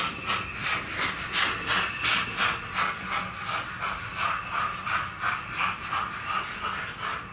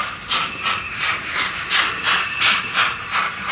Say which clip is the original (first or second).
first